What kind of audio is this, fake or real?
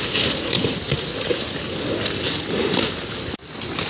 real